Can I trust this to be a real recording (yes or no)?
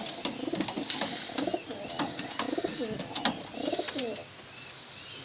yes